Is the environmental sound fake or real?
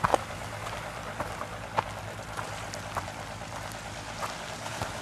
real